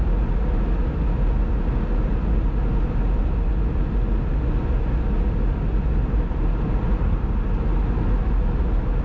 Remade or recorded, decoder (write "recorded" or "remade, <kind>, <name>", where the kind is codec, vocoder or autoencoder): recorded